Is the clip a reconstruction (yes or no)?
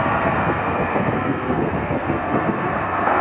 yes